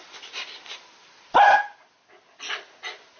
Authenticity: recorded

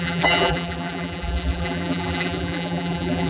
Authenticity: remade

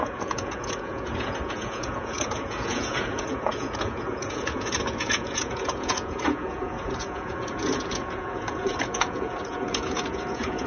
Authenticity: remade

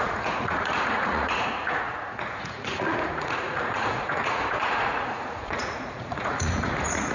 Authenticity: remade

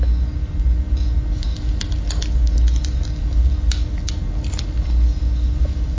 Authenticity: recorded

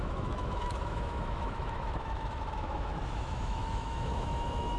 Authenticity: remade